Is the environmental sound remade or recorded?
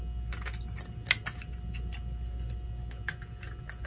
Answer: recorded